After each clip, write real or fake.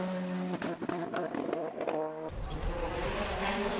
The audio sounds real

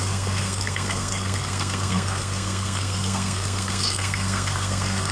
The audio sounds fake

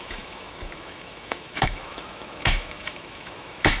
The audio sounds fake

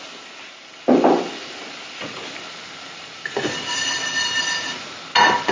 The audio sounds real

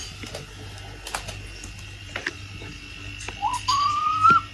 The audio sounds real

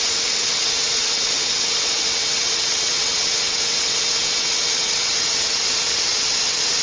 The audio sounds fake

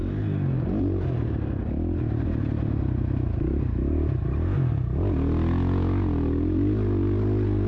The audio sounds real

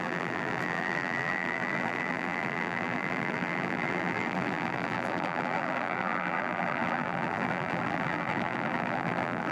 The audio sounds fake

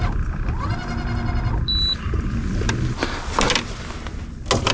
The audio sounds real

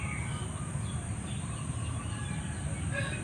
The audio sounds real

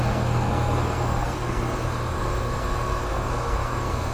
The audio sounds fake